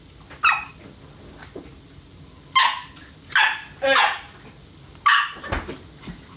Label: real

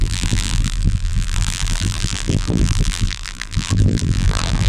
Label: fake